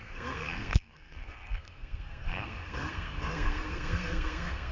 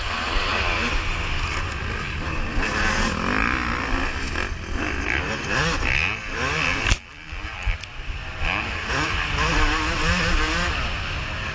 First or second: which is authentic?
second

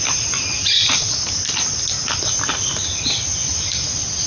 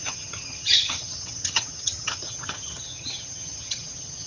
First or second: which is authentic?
first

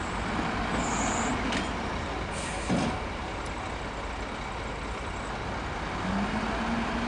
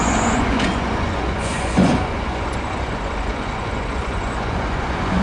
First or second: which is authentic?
first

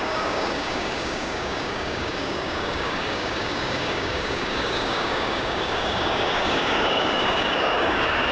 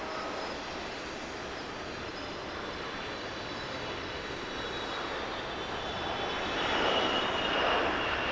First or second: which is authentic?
second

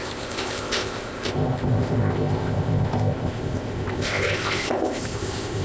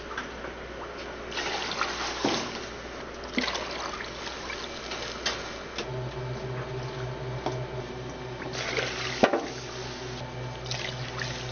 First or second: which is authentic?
second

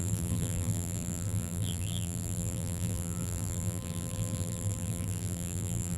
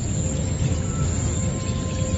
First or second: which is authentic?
second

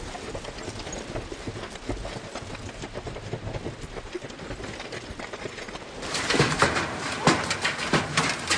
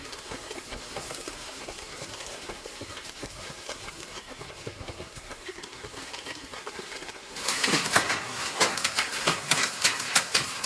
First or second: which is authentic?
first